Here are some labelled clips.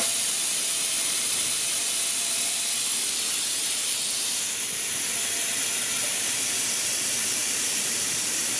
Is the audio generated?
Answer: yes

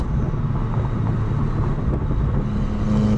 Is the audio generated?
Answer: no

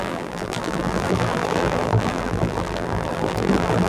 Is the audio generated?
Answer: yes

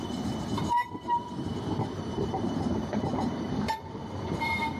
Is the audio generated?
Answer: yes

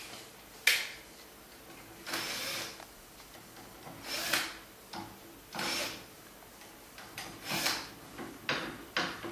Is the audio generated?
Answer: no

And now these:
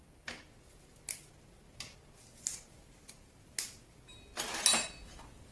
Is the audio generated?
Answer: no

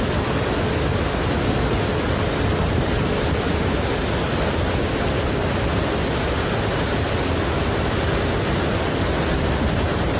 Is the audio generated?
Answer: no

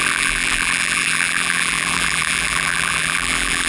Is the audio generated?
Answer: yes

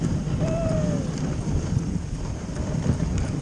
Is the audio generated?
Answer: yes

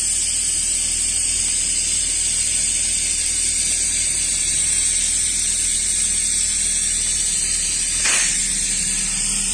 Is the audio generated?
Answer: no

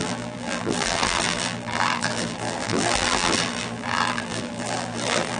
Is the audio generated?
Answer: yes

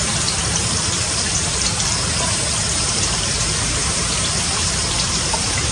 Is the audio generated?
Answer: yes